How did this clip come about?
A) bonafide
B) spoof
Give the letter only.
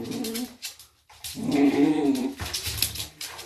A